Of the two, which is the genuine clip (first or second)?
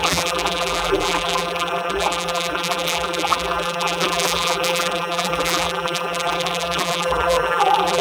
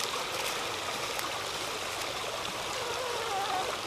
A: second